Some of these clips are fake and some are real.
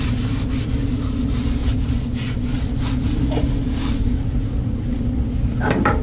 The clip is real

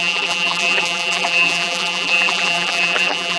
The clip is fake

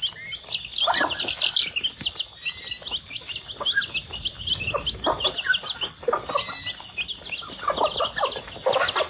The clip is real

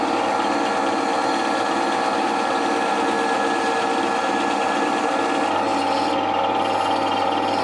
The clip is real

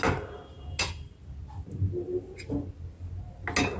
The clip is real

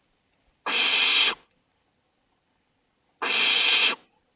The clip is real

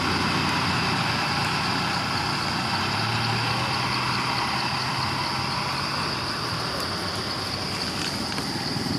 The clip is real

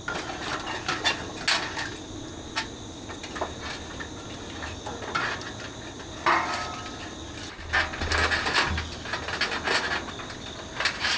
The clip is real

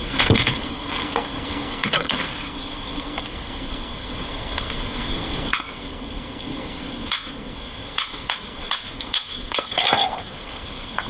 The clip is fake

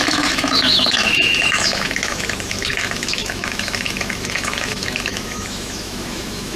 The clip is fake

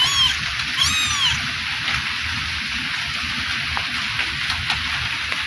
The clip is real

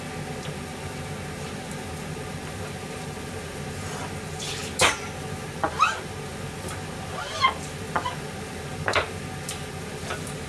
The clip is real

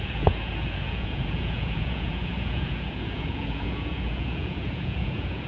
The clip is fake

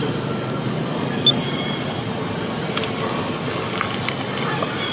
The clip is real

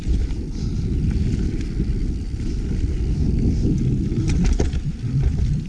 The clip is real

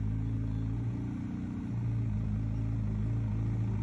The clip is real